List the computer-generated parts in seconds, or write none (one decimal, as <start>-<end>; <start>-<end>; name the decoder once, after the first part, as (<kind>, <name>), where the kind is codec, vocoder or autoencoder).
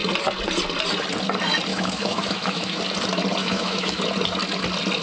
1.7-2.8 (autoencoder, DAC-VAE); 3.4-4.0